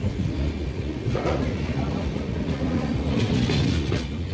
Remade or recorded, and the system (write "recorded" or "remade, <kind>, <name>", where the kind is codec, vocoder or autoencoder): remade, vocoder, Vocos